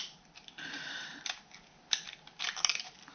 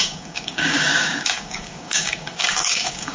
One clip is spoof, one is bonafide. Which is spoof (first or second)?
second